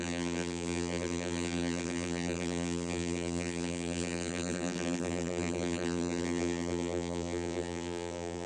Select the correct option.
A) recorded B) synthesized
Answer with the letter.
B